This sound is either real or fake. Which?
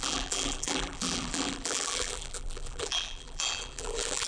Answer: fake